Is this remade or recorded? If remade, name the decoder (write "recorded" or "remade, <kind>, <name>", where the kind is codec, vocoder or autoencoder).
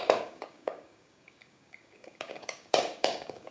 remade, codec, DAC